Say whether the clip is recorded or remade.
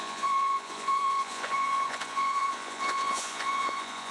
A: remade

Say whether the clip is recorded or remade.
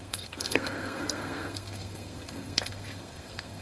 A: remade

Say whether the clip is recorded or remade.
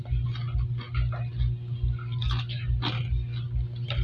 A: recorded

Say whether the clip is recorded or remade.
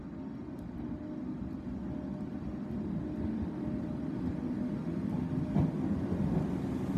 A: recorded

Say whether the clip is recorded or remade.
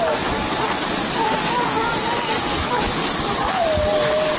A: recorded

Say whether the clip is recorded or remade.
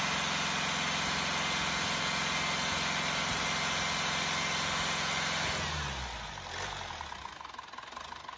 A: recorded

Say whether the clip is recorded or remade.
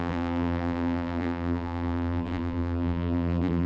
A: remade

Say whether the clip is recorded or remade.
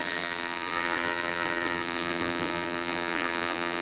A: remade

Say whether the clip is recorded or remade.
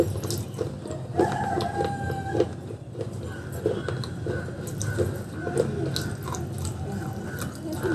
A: recorded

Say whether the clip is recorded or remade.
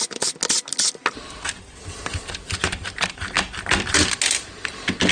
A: recorded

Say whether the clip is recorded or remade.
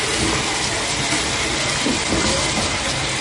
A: recorded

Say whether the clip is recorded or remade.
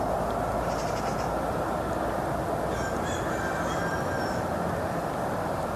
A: recorded